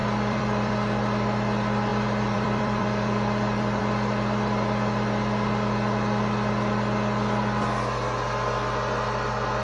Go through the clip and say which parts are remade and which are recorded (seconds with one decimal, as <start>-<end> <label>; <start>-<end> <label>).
0.0-0.7 remade; 0.7-1.9 recorded; 1.9-3.8 remade; 3.8-9.6 recorded